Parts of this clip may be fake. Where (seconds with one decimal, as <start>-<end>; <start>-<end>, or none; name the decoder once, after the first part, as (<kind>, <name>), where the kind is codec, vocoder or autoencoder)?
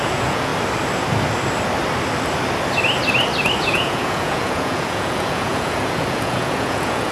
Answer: 0.0-0.5 (vocoder, Vocos); 3.6-7.1